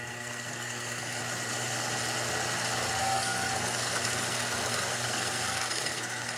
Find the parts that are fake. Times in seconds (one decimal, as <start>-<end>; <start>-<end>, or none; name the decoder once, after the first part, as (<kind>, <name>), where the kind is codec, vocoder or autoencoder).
0.0-1.2 (codec, SNAC); 3.0-6.4